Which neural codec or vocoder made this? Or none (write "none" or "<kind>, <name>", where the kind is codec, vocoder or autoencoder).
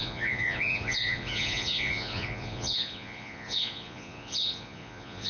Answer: vocoder, Vocos